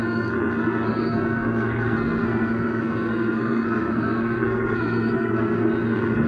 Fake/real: fake